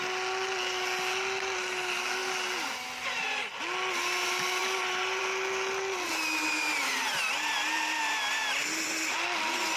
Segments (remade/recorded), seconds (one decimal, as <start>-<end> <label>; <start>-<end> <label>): 0.0-2.2 recorded; 2.2-3.6 remade; 3.6-4.6 recorded; 4.6-5.2 remade; 5.2-8.6 recorded; 8.6-9.4 remade; 9.4-9.8 recorded